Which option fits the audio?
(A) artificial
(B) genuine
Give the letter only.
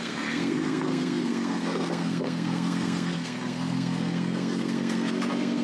A